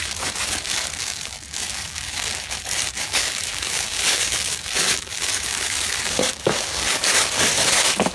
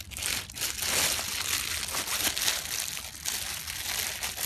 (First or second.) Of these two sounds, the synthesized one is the first